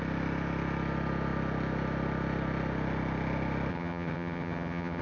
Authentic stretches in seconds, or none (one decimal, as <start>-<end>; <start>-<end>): 0.0-3.7